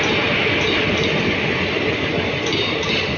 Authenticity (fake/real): real